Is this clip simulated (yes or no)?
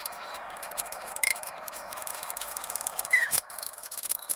yes